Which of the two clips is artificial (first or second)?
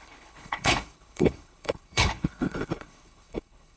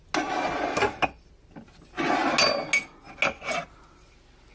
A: first